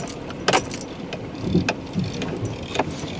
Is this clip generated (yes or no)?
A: no